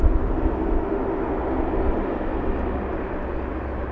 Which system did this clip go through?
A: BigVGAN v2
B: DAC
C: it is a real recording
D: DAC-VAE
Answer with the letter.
C